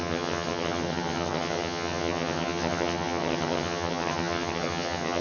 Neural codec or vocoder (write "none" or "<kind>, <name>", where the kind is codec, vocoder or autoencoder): vocoder, HiFi-GAN